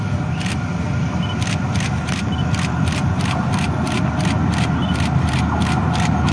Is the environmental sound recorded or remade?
recorded